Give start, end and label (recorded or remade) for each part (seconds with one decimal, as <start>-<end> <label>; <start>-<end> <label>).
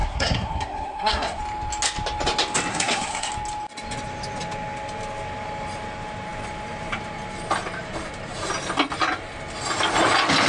0.0-1.4 remade; 1.4-2.7 recorded; 2.7-3.3 remade; 3.3-10.5 recorded